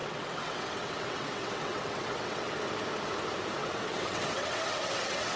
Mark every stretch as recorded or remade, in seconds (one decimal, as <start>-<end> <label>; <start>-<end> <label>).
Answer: 0.0-2.5 remade; 2.5-3.6 recorded; 3.6-5.4 remade